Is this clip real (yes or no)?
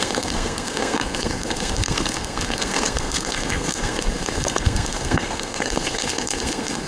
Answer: no